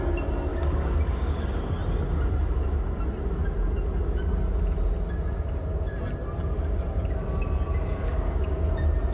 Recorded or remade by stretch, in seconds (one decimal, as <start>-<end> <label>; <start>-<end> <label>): 0.0-0.5 recorded; 0.5-1.7 remade; 1.7-8.0 recorded; 8.0-8.5 remade; 8.5-9.1 recorded